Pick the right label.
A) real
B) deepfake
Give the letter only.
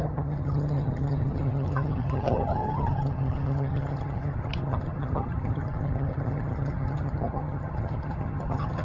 B